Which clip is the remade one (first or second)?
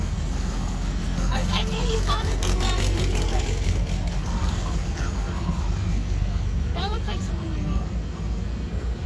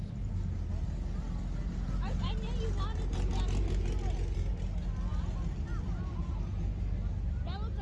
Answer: first